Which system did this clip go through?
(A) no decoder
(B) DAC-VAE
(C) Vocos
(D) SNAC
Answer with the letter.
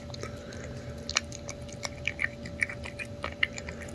A